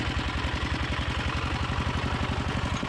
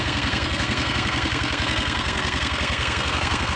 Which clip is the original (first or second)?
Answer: first